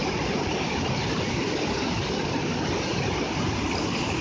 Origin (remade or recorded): recorded